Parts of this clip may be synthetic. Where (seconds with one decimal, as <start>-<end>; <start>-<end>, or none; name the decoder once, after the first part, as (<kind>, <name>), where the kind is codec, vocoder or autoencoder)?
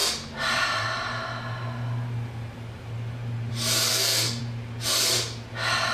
3.9-4.4 (codec, SNAC)